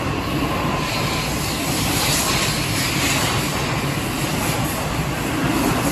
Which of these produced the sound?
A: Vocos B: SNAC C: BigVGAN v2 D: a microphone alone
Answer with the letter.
D